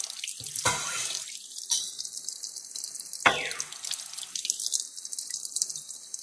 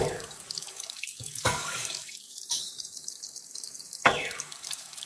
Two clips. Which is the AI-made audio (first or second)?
second